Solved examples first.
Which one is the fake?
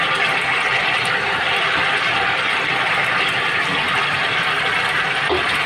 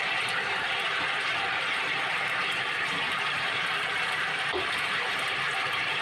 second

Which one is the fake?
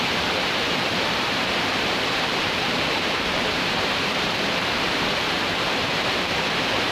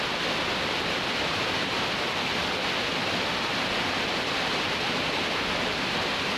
first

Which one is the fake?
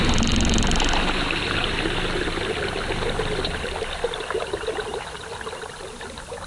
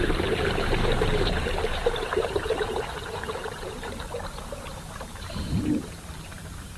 second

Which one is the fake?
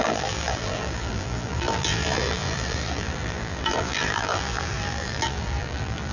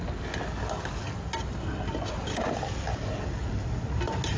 first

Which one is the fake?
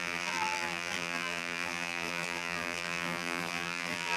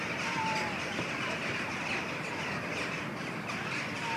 first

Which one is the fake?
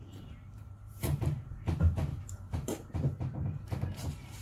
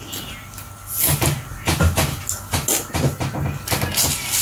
first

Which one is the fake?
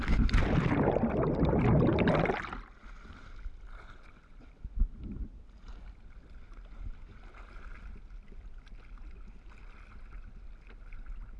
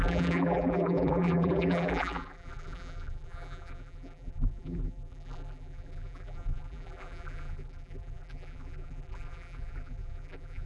second